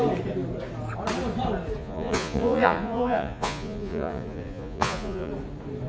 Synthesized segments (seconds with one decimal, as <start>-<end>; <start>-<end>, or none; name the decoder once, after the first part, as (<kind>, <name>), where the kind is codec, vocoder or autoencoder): 1.8-5.3 (vocoder, Vocos)